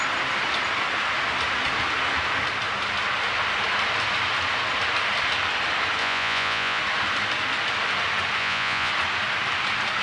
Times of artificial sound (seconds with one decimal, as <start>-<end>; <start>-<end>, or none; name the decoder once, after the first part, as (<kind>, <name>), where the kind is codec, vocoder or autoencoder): 6.0-6.8 (vocoder, Vocos); 8.4-8.9